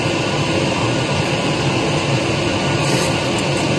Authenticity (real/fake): real